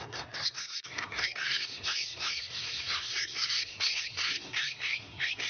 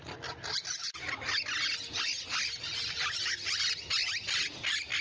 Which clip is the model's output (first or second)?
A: first